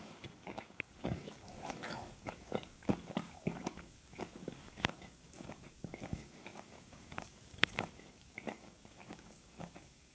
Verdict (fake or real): fake